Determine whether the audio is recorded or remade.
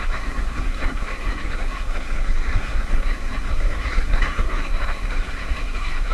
remade